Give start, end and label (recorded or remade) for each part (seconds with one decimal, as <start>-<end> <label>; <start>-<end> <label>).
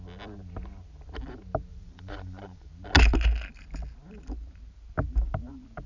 0.0-1.7 recorded; 1.7-2.7 remade; 2.7-5.9 recorded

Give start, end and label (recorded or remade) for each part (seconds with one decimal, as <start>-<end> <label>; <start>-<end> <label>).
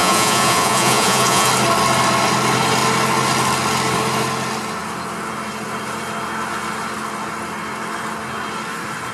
0.0-1.5 remade; 1.5-9.1 recorded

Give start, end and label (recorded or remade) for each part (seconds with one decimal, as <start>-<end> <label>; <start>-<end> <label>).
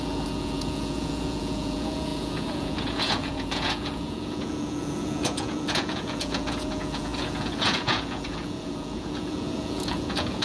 0.0-10.4 remade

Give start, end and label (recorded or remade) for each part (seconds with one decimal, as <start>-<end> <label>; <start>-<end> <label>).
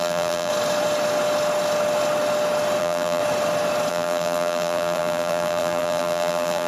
0.0-0.5 remade; 0.5-2.8 recorded; 2.8-3.2 remade; 3.2-3.9 recorded; 3.9-6.7 remade